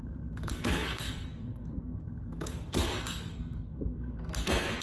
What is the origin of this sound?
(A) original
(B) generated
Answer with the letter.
B